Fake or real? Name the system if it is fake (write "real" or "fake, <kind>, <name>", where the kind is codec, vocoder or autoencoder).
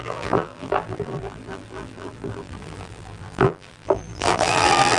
fake, vocoder, BigVGAN v2